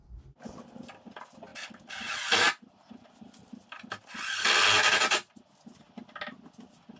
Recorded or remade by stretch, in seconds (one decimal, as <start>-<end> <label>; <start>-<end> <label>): 0.0-7.0 recorded

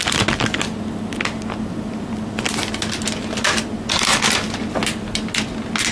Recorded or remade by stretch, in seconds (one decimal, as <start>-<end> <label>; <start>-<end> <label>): 0.0-5.9 recorded

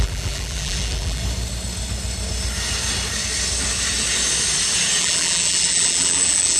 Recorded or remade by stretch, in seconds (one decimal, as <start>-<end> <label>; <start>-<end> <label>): 0.0-1.2 remade; 1.2-5.0 recorded; 5.0-6.6 remade

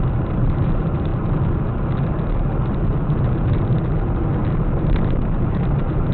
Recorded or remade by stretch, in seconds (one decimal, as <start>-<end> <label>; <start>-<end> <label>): 0.0-1.1 remade; 1.1-4.8 recorded; 4.8-6.1 remade

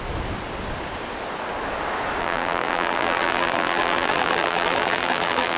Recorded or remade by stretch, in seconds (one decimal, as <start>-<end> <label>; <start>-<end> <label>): 0.0-2.2 recorded; 2.2-5.6 remade